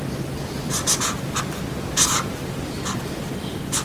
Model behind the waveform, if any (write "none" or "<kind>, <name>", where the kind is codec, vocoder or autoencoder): none